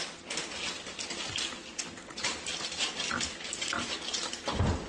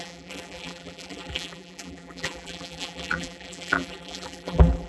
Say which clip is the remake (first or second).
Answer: second